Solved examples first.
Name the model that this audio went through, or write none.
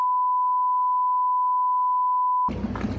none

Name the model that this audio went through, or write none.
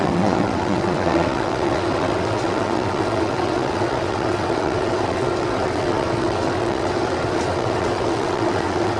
vocoder, WaveNeXt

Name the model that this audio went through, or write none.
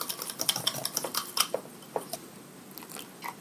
none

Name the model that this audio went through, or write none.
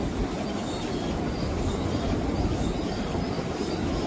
none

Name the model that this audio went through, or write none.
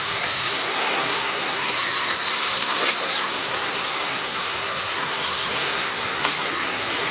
codec, SNAC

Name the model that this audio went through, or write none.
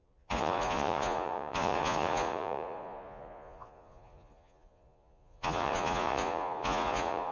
vocoder, Vocos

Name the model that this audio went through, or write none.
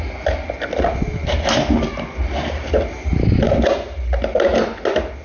none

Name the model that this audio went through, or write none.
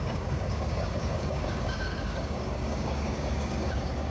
codec, DAC